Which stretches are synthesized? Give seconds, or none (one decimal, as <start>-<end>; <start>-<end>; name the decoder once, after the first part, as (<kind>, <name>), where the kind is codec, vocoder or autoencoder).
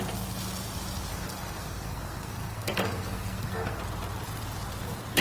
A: 1.1-3.8 (codec, SNAC)